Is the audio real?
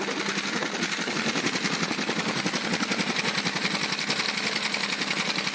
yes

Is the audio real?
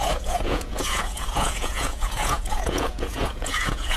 no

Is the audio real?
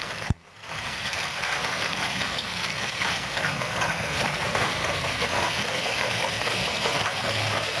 no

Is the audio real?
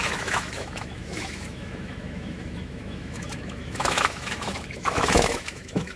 no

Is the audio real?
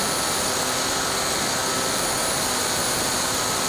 yes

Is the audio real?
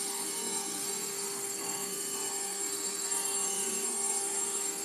no